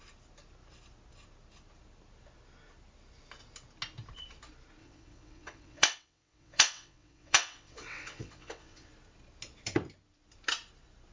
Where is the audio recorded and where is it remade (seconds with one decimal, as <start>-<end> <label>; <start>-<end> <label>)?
0.0-4.8 recorded; 4.8-8.9 remade; 8.9-11.1 recorded